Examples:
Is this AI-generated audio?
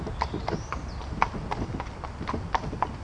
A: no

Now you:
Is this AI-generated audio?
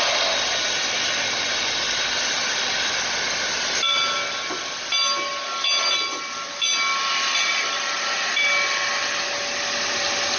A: no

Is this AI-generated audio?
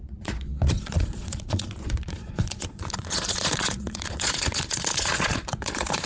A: yes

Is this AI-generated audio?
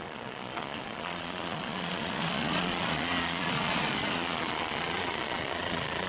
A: yes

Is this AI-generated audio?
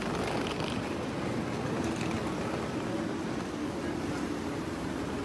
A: no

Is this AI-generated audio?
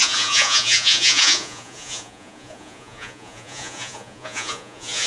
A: yes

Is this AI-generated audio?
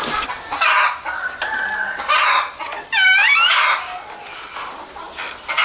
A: no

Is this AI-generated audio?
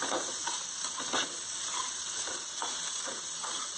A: yes